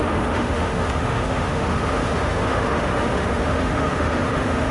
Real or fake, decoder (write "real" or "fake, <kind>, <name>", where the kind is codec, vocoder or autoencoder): fake, autoencoder, DAC-VAE